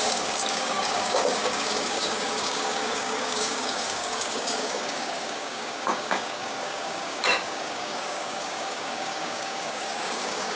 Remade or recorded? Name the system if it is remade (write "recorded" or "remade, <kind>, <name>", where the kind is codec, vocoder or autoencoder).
remade, codec, DAC